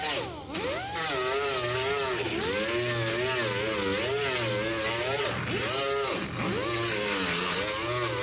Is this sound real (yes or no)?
yes